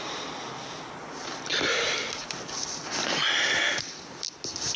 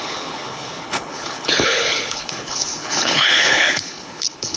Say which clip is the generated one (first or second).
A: second